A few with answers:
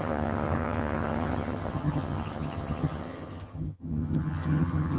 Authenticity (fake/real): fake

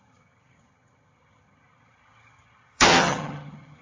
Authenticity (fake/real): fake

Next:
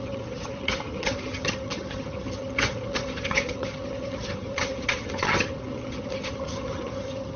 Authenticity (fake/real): fake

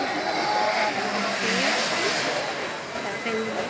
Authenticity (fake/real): real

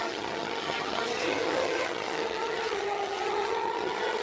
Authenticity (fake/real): fake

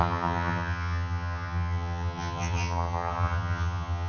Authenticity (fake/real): fake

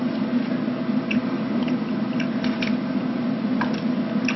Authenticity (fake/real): real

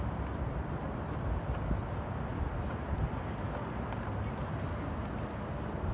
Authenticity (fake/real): real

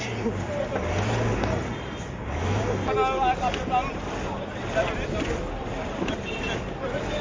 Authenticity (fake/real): real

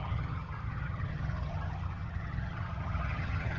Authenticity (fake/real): fake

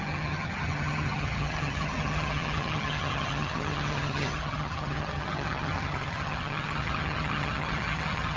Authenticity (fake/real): fake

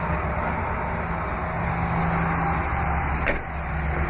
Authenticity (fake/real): real